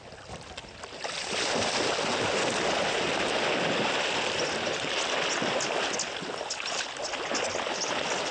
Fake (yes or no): no